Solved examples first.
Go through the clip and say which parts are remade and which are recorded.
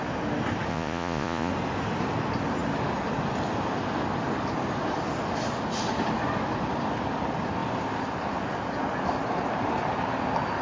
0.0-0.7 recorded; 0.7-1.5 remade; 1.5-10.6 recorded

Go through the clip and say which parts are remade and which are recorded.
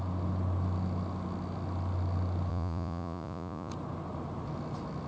0.0-2.5 recorded; 2.5-3.7 remade; 3.7-5.1 recorded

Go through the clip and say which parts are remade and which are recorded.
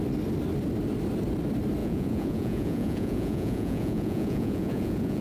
0.0-1.8 recorded; 1.8-5.2 remade